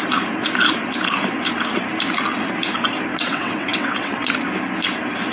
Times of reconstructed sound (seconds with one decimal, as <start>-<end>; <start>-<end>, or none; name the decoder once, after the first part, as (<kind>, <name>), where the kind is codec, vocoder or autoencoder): 3.1-4.3 (vocoder, WaveNeXt)

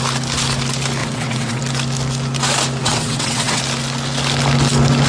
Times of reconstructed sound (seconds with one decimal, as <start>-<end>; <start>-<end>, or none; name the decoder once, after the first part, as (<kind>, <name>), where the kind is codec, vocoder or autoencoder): 1.0-1.6 (vocoder, WaveNeXt); 2.8-3.6

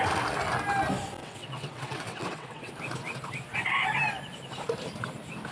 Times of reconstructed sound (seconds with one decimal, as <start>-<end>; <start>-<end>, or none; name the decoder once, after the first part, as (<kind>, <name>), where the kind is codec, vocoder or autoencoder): 1.2-2.7 (vocoder, WaveNeXt)

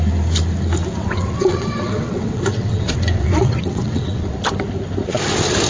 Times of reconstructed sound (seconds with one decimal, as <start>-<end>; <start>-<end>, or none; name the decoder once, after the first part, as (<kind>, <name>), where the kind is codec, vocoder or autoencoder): 0.9-4.3 (vocoder, WaveNeXt)